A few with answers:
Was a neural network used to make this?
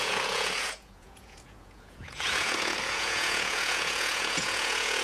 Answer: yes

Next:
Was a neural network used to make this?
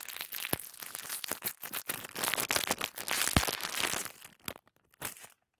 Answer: no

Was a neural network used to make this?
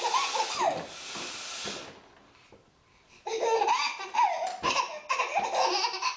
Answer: no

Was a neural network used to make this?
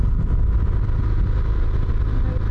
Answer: no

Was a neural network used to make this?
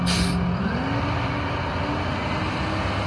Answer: no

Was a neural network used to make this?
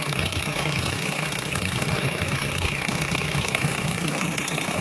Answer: yes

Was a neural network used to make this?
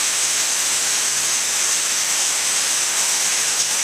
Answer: yes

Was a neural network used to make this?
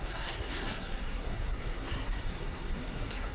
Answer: yes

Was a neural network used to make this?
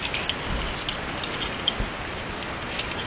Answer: no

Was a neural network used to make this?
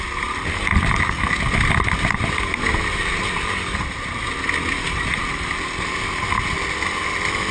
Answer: no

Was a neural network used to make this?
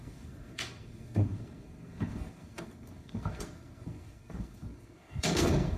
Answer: yes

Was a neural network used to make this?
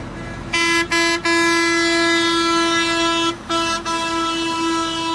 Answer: no